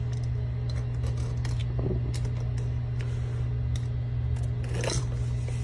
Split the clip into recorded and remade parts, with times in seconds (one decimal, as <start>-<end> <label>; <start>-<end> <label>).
0.0-5.6 recorded